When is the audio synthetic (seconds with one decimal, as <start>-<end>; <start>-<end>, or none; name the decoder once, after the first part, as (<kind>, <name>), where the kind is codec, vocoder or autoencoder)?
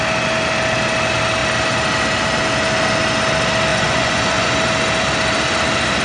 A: 3.7-4.5 (vocoder, Vocos)